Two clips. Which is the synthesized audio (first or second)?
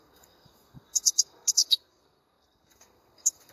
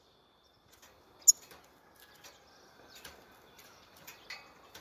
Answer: first